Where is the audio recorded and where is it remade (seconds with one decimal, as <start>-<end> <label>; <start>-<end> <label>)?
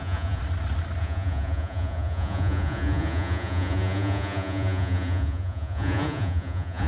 0.0-0.4 remade; 0.4-1.0 recorded; 1.0-6.9 remade